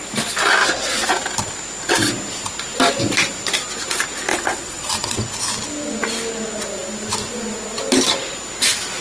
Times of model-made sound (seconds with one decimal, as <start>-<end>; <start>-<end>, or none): 0.6-1.1; 4.3-5.3